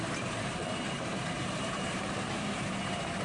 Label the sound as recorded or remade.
remade